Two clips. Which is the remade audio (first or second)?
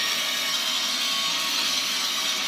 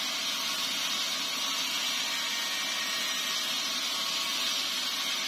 first